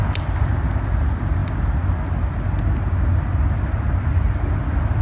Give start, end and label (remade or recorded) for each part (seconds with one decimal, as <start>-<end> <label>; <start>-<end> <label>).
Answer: 0.0-5.0 recorded

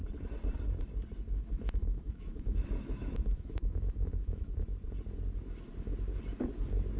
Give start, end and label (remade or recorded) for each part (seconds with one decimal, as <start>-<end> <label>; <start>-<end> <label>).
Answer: 0.0-1.4 recorded; 1.4-4.5 remade; 4.5-7.0 recorded

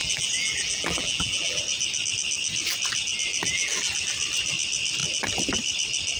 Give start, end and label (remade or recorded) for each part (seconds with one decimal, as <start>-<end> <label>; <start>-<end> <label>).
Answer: 0.0-1.6 remade; 1.6-3.3 recorded; 3.3-3.9 remade; 3.9-6.2 recorded

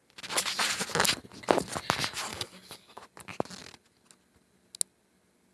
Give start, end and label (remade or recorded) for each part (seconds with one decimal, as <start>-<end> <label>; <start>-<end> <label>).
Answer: 0.0-2.3 recorded; 2.3-3.0 remade; 3.0-5.5 recorded